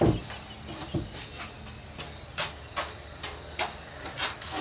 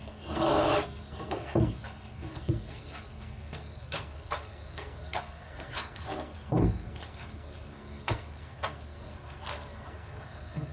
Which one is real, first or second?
first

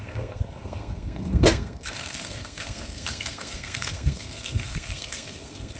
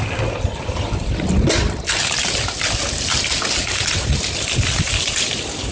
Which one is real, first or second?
second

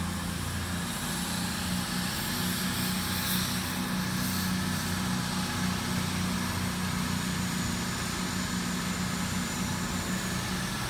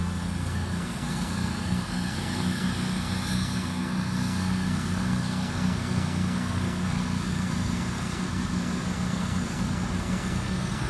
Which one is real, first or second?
first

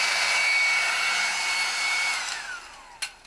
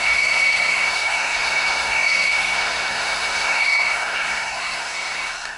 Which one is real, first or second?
first